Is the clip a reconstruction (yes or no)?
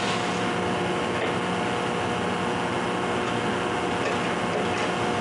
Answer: no